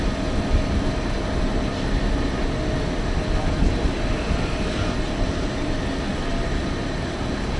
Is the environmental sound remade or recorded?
recorded